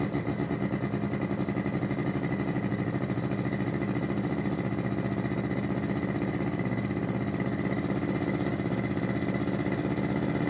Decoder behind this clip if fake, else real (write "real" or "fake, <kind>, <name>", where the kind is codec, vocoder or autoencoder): real